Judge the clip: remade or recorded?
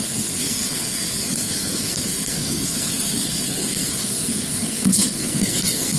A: remade